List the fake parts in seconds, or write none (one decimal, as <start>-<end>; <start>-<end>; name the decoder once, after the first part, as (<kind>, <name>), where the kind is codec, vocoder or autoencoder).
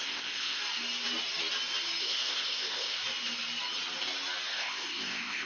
0.0-0.6 (codec, ZipCodec); 2.0-3.0; 4.5-5.5